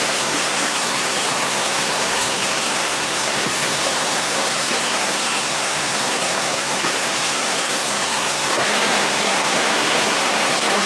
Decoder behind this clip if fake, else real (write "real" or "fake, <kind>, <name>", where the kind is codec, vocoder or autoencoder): fake, codec, SNAC